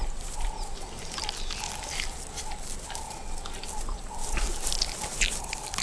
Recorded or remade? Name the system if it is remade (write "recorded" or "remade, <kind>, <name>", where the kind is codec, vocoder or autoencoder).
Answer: recorded